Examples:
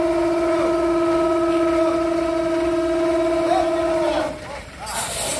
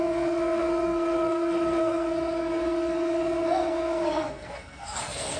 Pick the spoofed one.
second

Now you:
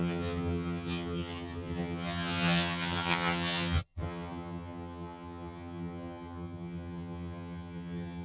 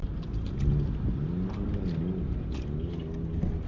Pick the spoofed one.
first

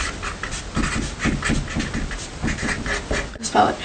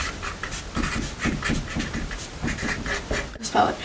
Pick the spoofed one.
second